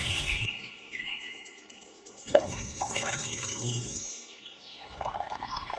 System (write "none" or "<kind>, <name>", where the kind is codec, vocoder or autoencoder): codec, SNAC